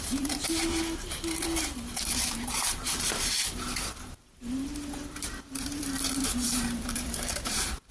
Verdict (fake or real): fake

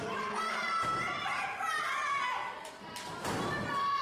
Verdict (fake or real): fake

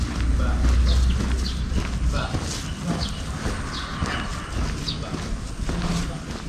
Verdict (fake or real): real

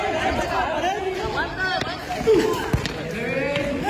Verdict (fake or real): real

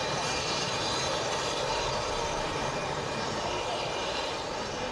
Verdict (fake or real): fake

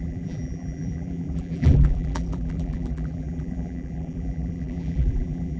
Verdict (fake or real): fake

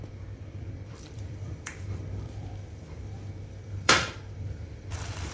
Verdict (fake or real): fake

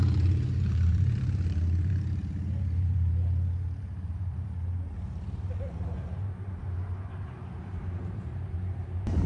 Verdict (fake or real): fake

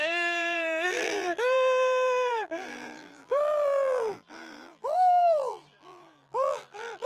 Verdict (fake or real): fake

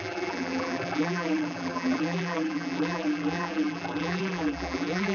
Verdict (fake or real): fake